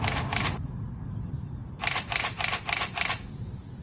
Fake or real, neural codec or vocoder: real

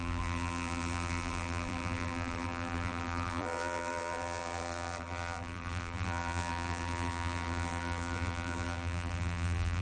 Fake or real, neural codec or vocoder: fake, vocoder, BigVGAN v2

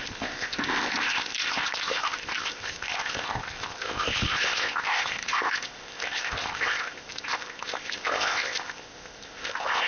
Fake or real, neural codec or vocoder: fake, codec, ZipCodec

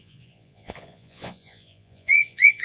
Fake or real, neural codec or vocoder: fake, vocoder, Vocos